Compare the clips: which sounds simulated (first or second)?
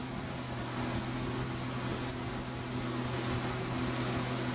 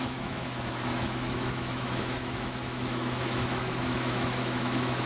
second